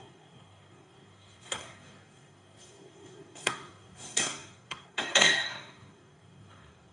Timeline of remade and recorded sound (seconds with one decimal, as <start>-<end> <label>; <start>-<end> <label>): 0.0-6.9 remade